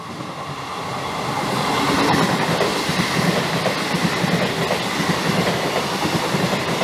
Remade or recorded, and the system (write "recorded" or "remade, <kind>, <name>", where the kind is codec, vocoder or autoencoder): recorded